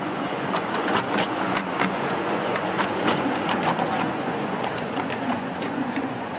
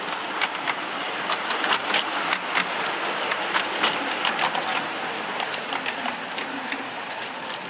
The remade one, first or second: first